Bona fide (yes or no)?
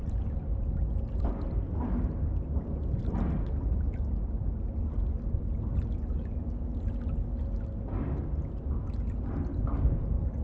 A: yes